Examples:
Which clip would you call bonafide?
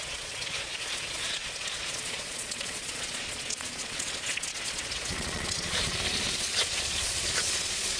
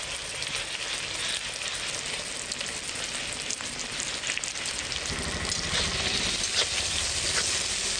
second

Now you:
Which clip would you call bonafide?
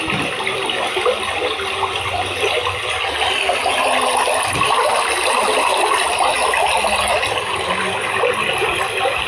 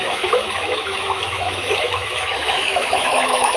first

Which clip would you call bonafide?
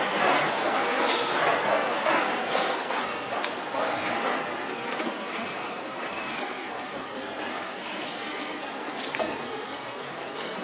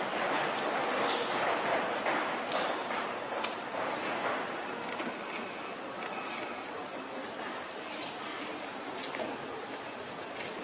second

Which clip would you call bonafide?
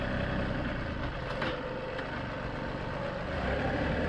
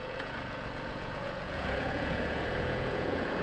first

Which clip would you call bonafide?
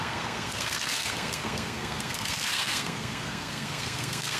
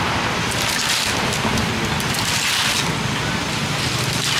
second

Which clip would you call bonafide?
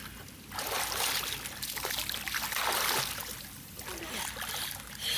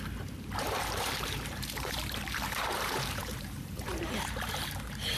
first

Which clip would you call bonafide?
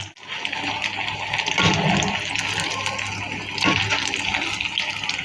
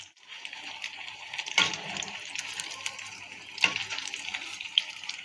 first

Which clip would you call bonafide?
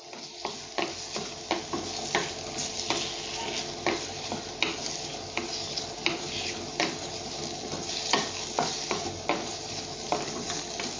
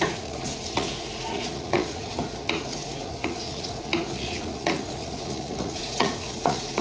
first